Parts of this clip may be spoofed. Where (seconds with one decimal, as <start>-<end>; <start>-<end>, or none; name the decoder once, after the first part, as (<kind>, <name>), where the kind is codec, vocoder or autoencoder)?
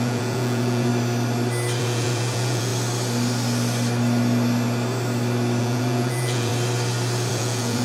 0.0-0.9 (vocoder, Vocos); 1.8-2.7; 5.6-6.5; 7.3-7.8